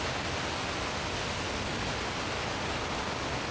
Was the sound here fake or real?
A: real